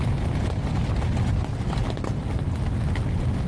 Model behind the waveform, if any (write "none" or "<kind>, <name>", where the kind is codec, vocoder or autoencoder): none